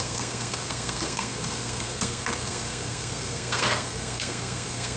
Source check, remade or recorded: remade